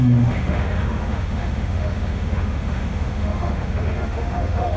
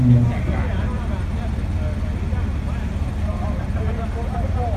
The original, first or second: second